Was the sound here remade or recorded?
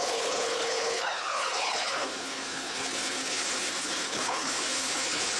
remade